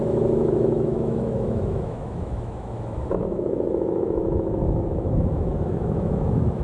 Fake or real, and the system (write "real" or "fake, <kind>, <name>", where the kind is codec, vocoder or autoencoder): fake, autoencoder, DAC-VAE